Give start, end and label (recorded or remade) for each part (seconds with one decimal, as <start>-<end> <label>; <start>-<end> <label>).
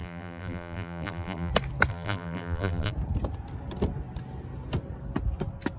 0.0-1.5 remade; 1.5-1.9 recorded; 1.9-2.9 remade; 2.9-5.8 recorded